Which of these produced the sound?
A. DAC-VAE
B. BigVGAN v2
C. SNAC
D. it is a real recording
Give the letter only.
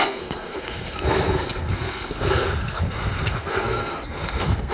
C